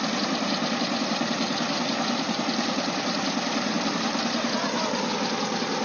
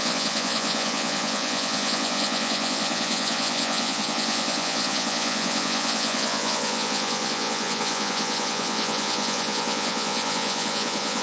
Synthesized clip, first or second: second